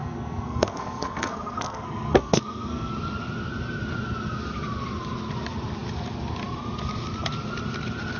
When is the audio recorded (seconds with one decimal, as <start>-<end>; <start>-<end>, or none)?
2.9-8.2